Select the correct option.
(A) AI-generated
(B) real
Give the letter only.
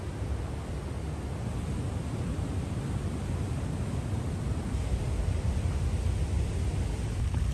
B